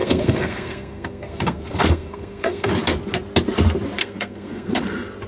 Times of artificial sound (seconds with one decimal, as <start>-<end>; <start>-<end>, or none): 0.0-2.7; 4.0-4.8